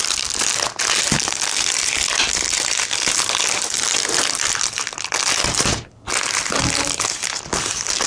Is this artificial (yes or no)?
no